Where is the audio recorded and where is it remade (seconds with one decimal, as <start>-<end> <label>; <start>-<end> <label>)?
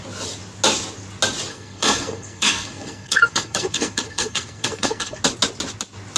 0.0-1.5 recorded; 1.5-5.2 remade; 5.2-6.2 recorded